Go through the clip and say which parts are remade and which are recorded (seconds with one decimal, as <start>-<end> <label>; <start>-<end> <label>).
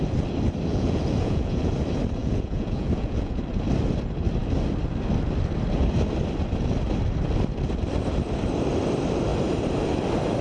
0.0-0.7 recorded; 0.7-1.7 remade; 1.7-2.2 recorded; 2.2-3.4 remade; 3.4-10.4 recorded